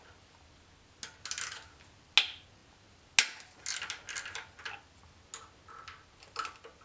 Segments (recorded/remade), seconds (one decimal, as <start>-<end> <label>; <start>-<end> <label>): 0.0-6.8 recorded